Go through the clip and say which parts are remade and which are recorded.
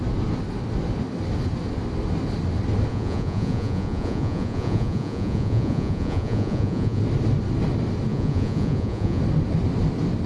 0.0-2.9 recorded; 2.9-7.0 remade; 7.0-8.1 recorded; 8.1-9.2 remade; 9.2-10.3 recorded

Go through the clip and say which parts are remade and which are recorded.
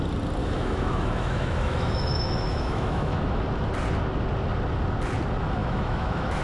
0.0-0.4 recorded; 0.4-3.4 remade; 3.4-5.6 recorded; 5.6-6.4 remade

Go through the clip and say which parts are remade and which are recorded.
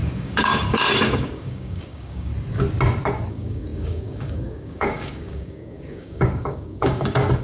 0.0-2.3 remade; 2.3-3.3 recorded; 3.3-7.4 remade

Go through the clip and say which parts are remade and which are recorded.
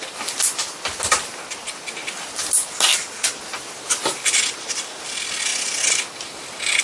0.0-6.8 recorded